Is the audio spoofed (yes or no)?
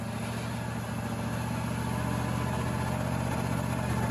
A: no